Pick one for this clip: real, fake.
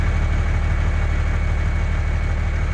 real